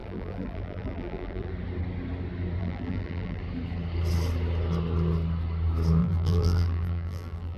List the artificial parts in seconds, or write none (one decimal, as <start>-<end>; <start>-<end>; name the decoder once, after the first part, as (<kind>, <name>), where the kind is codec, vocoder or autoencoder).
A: 0.0-1.5 (vocoder, BigVGAN v2); 2.6-3.4; 6.0-7.6